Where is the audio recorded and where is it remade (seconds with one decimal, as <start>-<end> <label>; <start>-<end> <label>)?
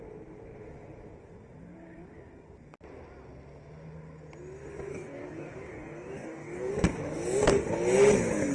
0.0-4.9 recorded; 4.9-6.7 remade; 6.7-8.5 recorded